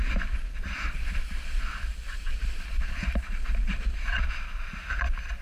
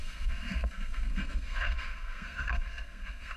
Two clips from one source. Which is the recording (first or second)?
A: first